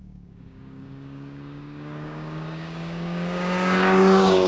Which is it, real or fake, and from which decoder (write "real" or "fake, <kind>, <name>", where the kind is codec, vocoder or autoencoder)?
fake, codec, DAC